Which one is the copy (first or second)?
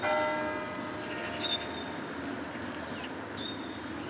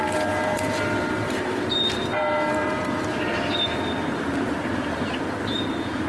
second